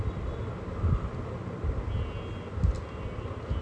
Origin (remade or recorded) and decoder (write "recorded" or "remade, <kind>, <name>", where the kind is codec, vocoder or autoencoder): recorded